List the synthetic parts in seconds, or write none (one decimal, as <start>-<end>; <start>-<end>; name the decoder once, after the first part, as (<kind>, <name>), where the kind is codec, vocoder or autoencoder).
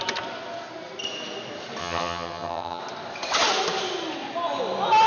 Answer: 1.8-2.8 (vocoder, HiFi-GAN)